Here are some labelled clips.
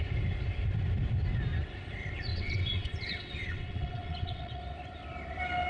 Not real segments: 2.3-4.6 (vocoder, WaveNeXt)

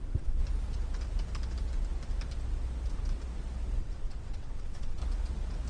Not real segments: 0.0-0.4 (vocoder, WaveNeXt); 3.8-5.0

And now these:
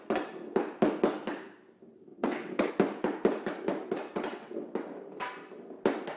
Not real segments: 2.1-2.7 (vocoder, WaveNeXt); 4.0-4.7

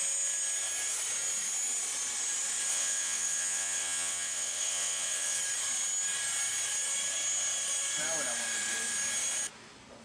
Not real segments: 2.7-5.4 (vocoder, WaveNeXt)

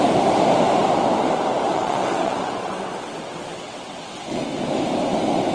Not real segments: 1.7-4.5 (vocoder, WaveNeXt)

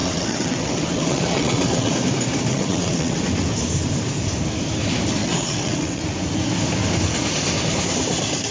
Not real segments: 0.0-1.9 (vocoder, WaveNeXt); 2.5-3.2; 5.2-6.0